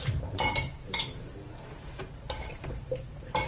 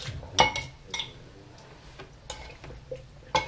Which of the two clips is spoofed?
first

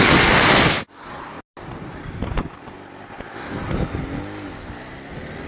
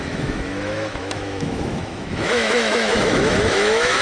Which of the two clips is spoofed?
second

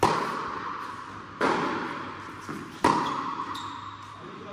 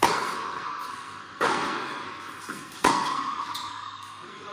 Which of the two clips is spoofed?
second